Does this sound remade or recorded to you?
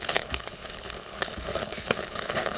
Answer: remade